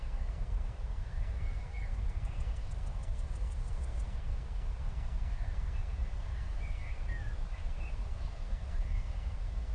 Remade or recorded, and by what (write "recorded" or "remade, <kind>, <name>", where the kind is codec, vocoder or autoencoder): remade, codec, SNAC